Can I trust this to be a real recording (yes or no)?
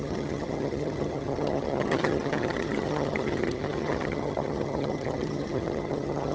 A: no